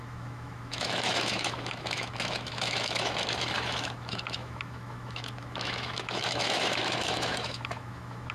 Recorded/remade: remade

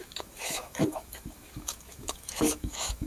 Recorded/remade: remade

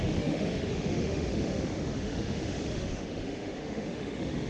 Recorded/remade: remade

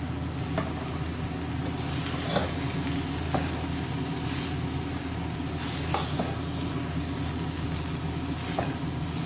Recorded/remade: recorded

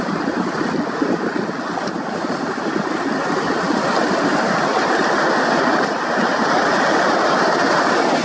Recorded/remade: recorded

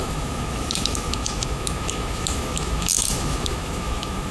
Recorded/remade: remade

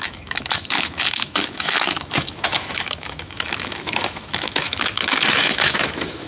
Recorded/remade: remade